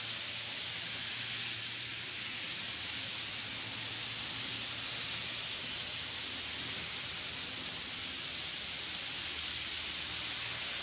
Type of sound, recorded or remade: recorded